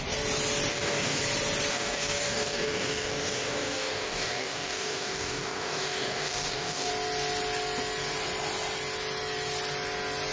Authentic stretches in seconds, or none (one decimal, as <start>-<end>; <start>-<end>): 0.0-0.7; 1.2-1.7; 6.9-10.3